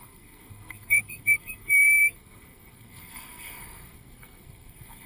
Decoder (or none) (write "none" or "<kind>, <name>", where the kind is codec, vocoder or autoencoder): codec, SNAC